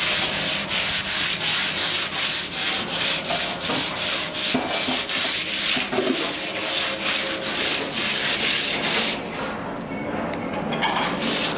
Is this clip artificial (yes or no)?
no